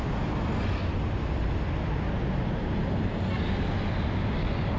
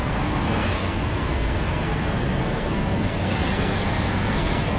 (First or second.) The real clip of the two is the first